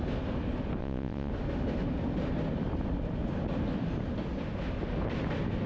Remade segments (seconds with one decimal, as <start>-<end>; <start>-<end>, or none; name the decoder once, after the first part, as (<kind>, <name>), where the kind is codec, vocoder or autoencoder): 0.8-1.3 (vocoder, Vocos)